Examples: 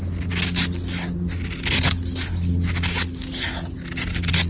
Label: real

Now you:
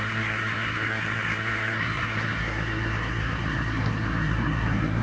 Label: fake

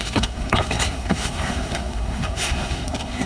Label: fake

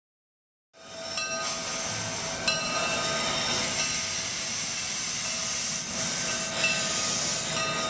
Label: real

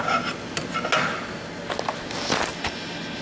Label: real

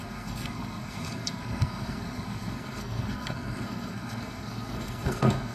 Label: fake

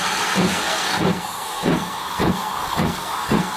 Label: fake